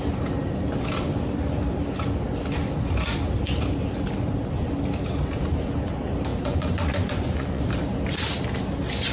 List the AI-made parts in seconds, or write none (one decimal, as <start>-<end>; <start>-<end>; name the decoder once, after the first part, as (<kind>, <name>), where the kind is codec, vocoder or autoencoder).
6.3-7.6 (vocoder, Vocos)